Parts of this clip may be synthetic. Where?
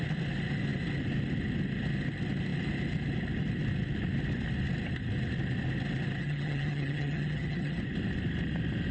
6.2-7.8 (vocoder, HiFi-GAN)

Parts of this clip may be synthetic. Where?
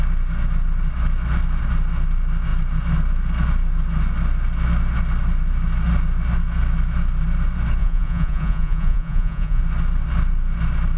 7.8-9.6 (vocoder, Vocos)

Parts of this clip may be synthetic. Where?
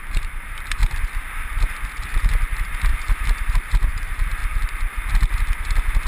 0.0-0.8 (vocoder, BigVGAN v2); 2.0-2.9; 3.9-4.4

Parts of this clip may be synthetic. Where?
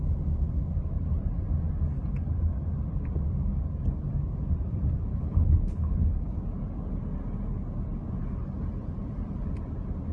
5.1-6.4 (codec, HILCodec)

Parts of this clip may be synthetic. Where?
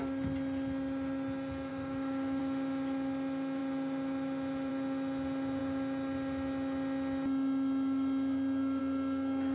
1.7-2.4 (codec, DAC)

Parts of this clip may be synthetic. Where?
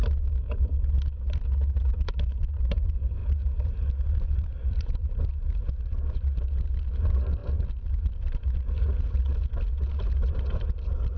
2.1-9.3 (vocoder, BigVGAN v2); 9.9-11.2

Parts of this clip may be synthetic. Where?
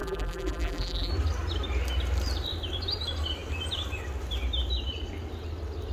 0.0-1.1 (vocoder, BigVGAN v2)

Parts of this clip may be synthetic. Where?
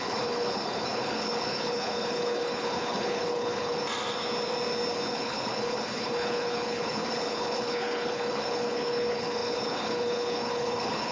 0.0-3.8 (codec, HILCodec); 5.1-11.1